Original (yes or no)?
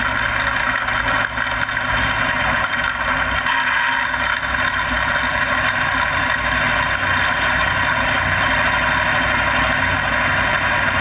yes